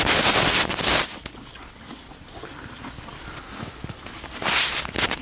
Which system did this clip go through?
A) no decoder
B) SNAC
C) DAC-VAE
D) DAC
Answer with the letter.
A